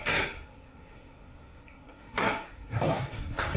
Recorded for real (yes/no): no